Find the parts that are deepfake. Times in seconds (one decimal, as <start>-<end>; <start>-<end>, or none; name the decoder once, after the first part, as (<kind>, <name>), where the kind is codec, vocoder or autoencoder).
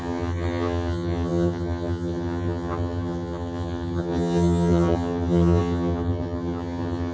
0.0-7.1 (vocoder, HiFi-GAN)